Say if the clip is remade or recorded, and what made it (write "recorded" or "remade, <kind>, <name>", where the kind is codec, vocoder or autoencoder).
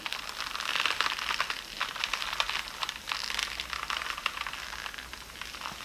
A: recorded